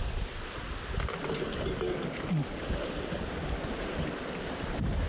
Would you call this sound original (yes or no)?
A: yes